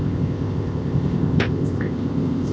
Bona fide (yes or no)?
no